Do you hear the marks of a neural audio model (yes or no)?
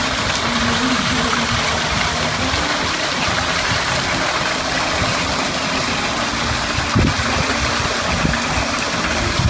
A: no